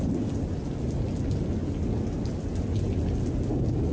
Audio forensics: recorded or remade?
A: recorded